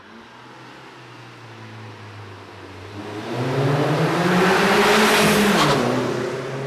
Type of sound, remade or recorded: recorded